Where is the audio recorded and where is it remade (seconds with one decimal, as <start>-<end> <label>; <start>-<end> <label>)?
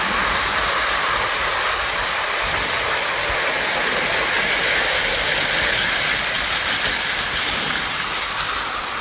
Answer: 0.0-9.0 recorded